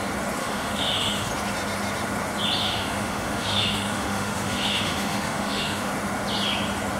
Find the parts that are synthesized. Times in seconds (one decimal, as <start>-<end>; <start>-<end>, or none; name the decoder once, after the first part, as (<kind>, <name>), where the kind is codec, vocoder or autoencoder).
0.4-1.3 (autoencoder, DAC-VAE); 2.6-5.9